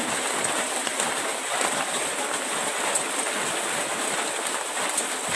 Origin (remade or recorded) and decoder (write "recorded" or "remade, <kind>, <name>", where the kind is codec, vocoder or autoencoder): recorded